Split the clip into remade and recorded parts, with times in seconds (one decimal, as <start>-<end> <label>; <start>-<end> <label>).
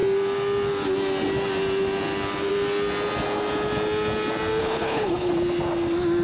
0.0-4.6 recorded; 4.6-5.3 remade; 5.3-6.2 recorded